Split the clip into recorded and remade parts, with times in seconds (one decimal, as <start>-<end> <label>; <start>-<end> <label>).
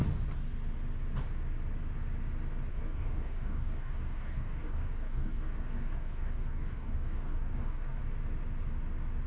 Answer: 0.0-2.7 recorded; 2.7-8.0 remade; 8.0-9.3 recorded